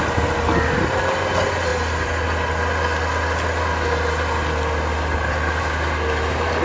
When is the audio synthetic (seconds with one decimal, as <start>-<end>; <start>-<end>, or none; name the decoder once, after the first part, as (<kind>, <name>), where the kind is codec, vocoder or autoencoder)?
none